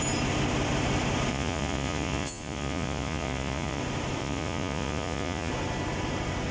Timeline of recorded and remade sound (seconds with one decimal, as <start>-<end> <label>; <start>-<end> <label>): 0.0-1.3 recorded; 1.3-3.8 remade; 3.8-4.2 recorded; 4.2-5.5 remade; 5.5-6.5 recorded